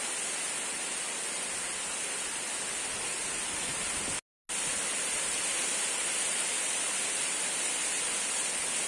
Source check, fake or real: real